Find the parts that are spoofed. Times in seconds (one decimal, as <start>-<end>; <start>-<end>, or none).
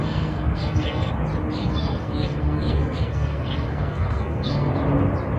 0.0-1.1; 1.6-4.7